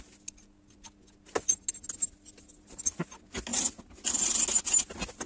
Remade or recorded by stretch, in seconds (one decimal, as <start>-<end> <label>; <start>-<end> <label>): 0.0-5.3 recorded